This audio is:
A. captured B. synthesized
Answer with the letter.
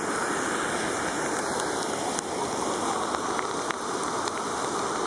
A